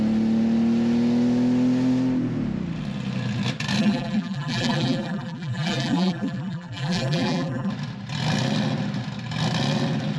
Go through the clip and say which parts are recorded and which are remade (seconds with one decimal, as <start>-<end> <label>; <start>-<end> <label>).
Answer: 0.0-3.8 recorded; 3.8-7.7 remade; 7.7-10.2 recorded